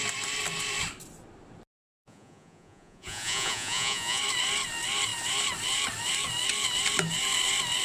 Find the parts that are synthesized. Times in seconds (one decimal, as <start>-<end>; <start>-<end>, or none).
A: 2.0-4.2